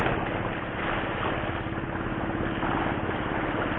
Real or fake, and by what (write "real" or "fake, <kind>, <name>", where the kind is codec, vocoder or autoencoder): real